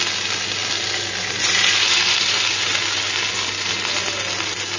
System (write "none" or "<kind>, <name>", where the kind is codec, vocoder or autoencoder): none